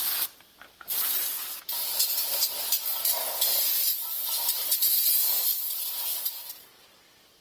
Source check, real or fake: real